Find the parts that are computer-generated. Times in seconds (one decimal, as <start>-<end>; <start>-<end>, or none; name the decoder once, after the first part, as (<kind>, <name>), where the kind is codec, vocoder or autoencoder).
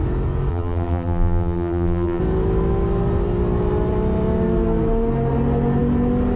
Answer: 0.5-2.2 (vocoder, BigVGAN v2)